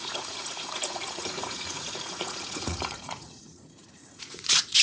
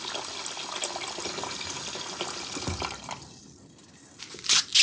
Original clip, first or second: second